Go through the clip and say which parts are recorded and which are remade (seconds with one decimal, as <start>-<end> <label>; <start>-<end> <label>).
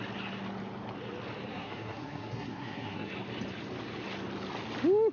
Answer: 0.0-1.5 recorded; 1.5-3.1 remade; 3.1-5.1 recorded